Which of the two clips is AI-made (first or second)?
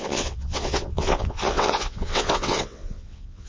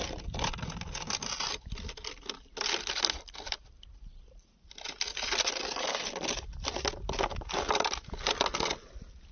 first